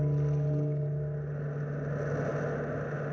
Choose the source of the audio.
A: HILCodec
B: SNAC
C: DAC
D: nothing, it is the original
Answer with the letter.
D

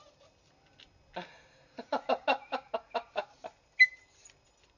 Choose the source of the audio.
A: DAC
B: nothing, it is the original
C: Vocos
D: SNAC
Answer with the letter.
B